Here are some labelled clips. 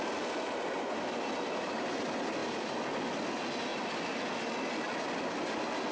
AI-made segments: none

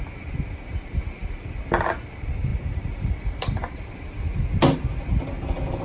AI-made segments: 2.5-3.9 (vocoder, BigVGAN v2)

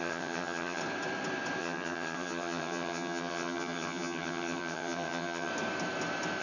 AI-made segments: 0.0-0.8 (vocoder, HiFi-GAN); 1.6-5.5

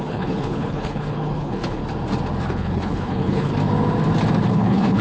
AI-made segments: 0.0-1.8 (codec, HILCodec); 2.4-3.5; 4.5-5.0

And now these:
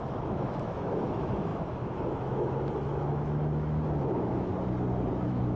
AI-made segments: 0.0-4.5 (autoencoder, DAC-VAE); 5.1-5.6